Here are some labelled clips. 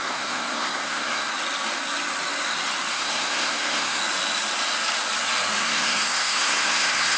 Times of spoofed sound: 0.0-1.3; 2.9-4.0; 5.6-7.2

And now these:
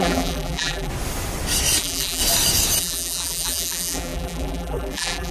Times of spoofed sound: 0.0-0.9; 1.8-2.2; 2.8-5.3

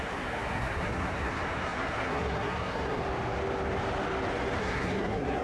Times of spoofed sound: 0.0-3.0; 4.6-5.4

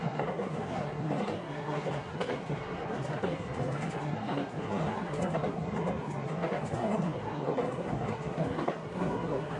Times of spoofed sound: 0.0-9.6

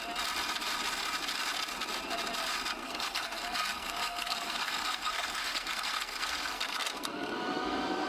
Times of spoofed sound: 2.8-8.1

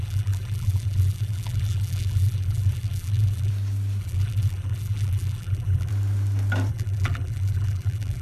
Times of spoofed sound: 0.0-3.5; 4.0-5.9; 6.7-8.2

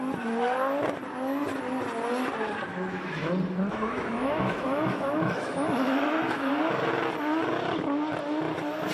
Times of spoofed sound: 2.7-3.3; 3.7-6.5